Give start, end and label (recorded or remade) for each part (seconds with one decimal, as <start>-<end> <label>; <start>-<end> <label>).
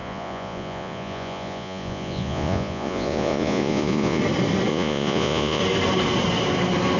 0.0-4.2 remade; 4.2-4.7 recorded; 4.7-5.6 remade; 5.6-7.0 recorded